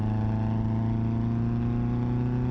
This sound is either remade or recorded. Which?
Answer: recorded